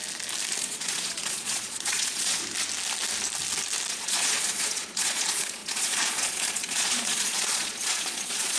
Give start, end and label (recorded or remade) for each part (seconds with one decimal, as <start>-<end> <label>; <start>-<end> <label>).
0.0-0.6 recorded; 0.6-2.4 remade; 2.4-3.9 recorded; 3.9-8.6 remade